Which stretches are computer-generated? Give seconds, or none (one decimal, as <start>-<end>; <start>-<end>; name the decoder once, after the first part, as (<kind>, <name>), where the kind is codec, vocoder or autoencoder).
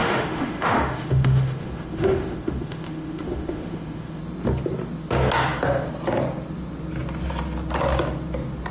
0.0-4.2 (autoencoder, DAC-VAE)